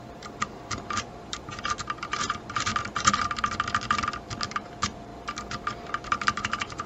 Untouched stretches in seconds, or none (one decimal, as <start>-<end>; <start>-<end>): 2.7-4.4; 5.1-5.8